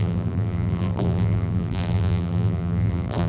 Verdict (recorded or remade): remade